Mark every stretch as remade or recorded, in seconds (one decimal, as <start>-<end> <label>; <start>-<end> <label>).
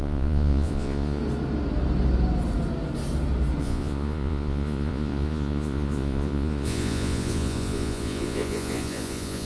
0.0-1.2 remade; 1.2-3.6 recorded; 3.6-9.5 remade